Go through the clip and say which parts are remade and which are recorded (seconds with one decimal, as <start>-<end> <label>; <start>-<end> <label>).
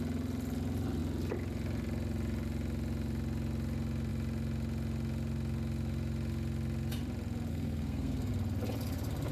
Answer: 0.0-7.5 recorded; 7.5-8.3 remade; 8.3-9.3 recorded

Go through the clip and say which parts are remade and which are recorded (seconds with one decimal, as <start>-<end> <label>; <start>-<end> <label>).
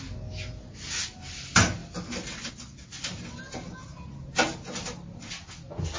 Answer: 0.0-6.0 recorded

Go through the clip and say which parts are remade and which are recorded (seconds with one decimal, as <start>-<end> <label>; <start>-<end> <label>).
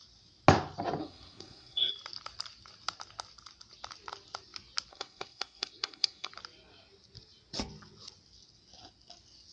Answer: 0.0-1.0 recorded; 1.0-1.9 remade; 1.9-4.9 recorded; 4.9-6.3 remade; 6.3-9.5 recorded